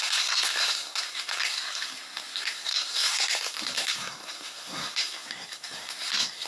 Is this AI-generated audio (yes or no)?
yes